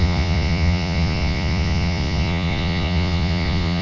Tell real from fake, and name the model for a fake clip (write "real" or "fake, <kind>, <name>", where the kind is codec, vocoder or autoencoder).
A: fake, vocoder, Vocos